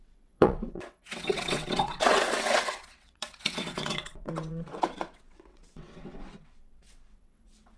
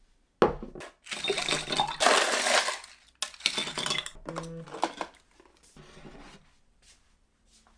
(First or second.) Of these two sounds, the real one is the second